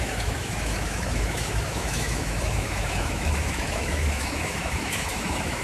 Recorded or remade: remade